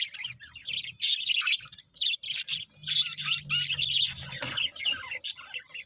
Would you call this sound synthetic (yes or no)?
no